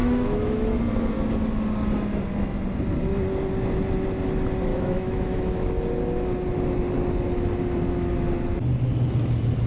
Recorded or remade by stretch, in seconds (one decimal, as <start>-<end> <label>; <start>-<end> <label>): 0.0-0.8 remade; 0.8-4.7 recorded; 4.7-5.4 remade; 5.4-9.7 recorded